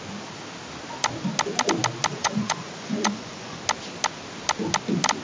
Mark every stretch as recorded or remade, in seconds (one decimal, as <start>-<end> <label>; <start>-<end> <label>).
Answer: 0.0-2.1 recorded; 2.1-3.6 remade; 3.6-5.2 recorded